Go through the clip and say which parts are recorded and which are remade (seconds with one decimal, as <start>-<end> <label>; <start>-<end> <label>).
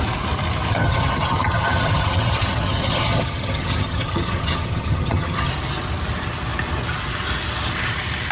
0.0-0.7 recorded; 0.7-5.5 remade; 5.5-8.3 recorded